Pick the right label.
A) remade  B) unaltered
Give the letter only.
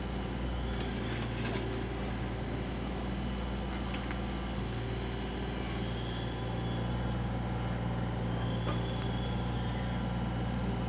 B